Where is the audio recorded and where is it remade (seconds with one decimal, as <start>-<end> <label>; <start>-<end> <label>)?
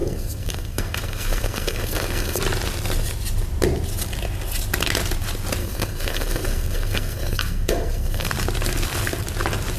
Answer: 0.0-2.4 remade; 2.4-5.6 recorded; 5.6-8.3 remade; 8.3-9.8 recorded